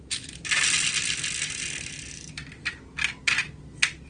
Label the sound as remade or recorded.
recorded